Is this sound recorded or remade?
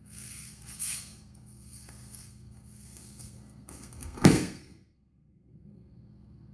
remade